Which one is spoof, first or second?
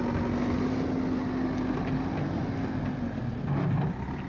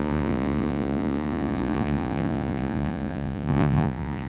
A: second